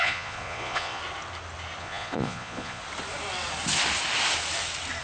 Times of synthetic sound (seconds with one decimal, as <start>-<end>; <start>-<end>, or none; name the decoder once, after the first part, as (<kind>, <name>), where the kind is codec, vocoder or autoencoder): 0.0-1.0 (vocoder, Vocos); 1.8-2.8